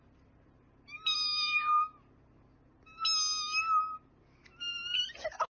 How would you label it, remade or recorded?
recorded